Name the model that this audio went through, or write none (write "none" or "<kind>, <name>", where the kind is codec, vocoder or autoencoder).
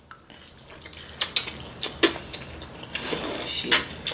none